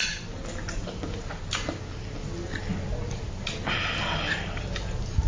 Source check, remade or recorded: recorded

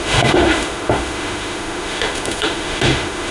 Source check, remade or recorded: remade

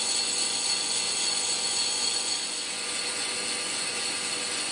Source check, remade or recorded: remade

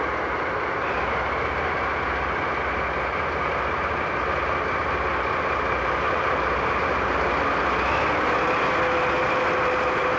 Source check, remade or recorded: recorded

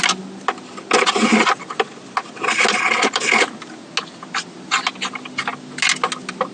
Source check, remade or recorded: recorded